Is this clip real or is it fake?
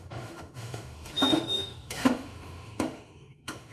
fake